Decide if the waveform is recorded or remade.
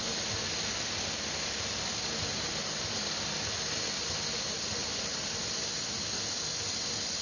recorded